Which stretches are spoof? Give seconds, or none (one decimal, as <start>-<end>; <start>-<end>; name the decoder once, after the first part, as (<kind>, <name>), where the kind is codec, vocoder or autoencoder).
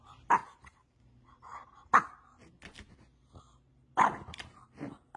none